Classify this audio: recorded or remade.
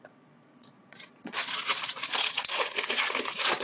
remade